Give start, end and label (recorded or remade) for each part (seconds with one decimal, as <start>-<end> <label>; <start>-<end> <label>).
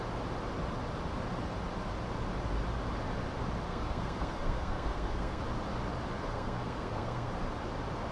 0.0-3.7 recorded; 3.7-5.4 remade; 5.4-6.2 recorded; 6.2-7.3 remade; 7.3-8.1 recorded